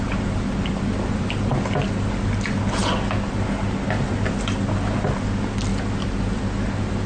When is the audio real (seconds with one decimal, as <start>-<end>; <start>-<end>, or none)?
0.0-7.1